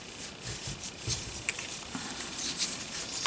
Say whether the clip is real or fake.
fake